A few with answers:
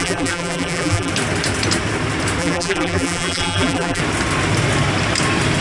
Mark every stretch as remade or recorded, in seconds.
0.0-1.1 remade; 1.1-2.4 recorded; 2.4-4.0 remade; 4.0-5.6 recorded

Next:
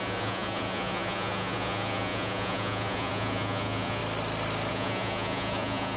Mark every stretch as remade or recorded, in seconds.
0.0-4.0 remade; 4.0-4.7 recorded; 4.7-6.0 remade

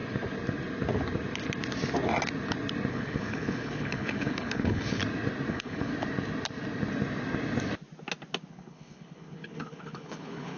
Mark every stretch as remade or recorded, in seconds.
0.0-2.9 recorded; 2.9-5.0 remade; 5.0-5.5 recorded; 5.5-5.9 remade; 5.9-8.5 recorded; 8.5-10.6 remade

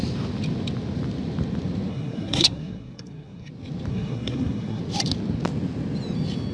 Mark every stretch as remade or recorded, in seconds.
0.0-1.9 recorded; 1.9-3.5 remade; 3.5-3.9 recorded; 3.9-4.8 remade; 4.8-6.5 recorded

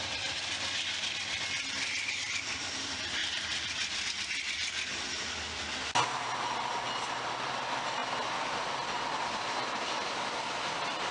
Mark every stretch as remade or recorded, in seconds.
0.0-11.1 recorded

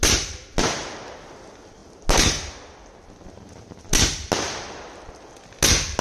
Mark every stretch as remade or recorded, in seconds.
0.0-6.0 recorded

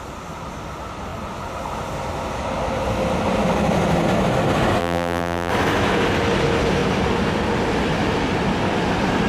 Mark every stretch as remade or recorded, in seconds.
0.0-4.8 recorded; 4.8-5.5 remade; 5.5-9.3 recorded

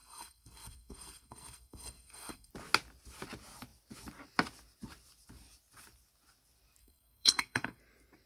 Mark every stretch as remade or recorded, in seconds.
0.0-2.5 remade; 2.5-6.8 recorded; 6.8-7.8 remade; 7.8-8.3 recorded